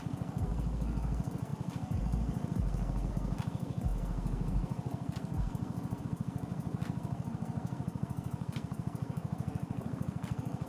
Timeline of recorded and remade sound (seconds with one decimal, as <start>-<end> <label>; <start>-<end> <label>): 0.0-10.7 remade